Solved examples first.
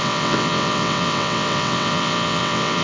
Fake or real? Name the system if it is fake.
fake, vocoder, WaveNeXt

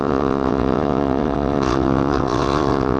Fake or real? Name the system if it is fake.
fake, vocoder, WaveNeXt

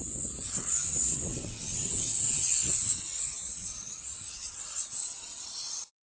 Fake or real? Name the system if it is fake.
fake, vocoder, WaveNeXt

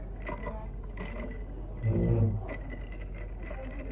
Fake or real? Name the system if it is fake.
real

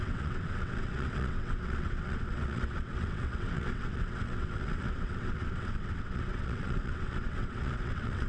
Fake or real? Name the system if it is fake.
fake, vocoder, WaveNeXt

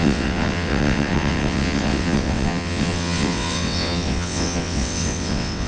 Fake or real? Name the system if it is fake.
fake, vocoder, WaveNeXt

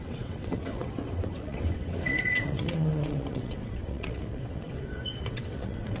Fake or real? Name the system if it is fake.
fake, vocoder, WaveNeXt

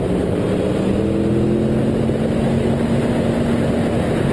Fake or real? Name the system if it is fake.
real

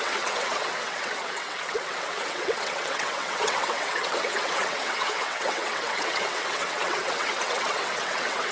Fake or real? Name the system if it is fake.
fake, vocoder, WaveNeXt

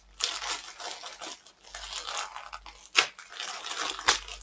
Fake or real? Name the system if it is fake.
real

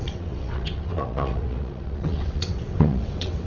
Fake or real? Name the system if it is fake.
fake, vocoder, WaveNeXt